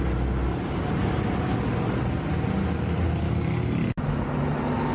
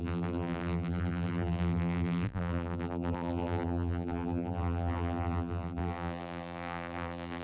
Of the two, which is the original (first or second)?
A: first